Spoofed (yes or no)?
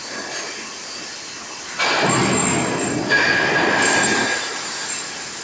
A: no